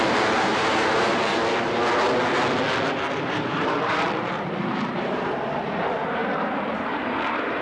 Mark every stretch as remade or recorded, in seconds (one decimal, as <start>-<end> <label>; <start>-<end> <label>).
0.0-1.4 remade; 1.4-3.1 recorded; 3.1-7.6 remade